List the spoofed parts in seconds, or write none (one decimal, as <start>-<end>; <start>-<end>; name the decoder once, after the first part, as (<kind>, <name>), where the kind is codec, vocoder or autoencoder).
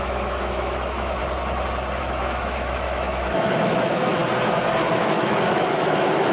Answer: 0.0-1.2 (autoencoder, DAC-VAE); 2.0-4.2; 4.9-6.3